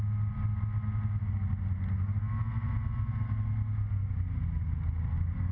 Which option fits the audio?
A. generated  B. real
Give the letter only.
B